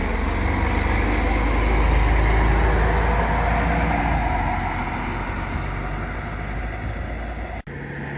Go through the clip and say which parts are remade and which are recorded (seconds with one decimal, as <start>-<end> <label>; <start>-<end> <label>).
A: 0.0-8.2 recorded